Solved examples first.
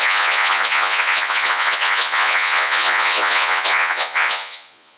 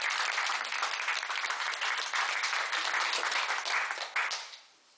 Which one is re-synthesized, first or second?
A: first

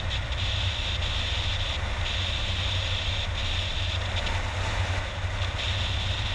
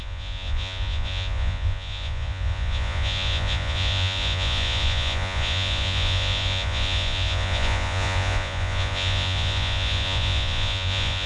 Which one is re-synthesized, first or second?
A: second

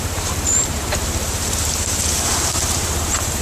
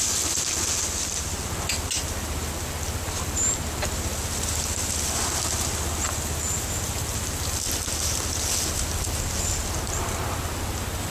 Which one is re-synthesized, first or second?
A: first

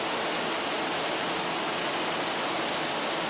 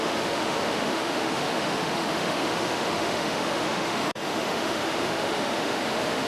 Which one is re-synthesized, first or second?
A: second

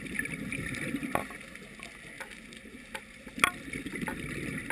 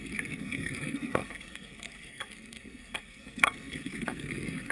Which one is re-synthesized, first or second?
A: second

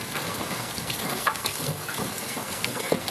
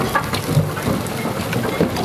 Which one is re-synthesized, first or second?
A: first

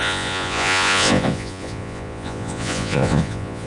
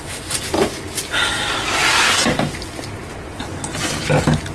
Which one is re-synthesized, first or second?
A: first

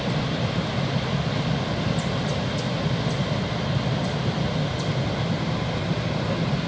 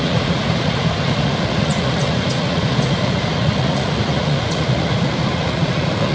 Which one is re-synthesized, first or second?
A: second